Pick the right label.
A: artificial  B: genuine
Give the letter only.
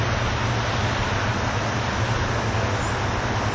B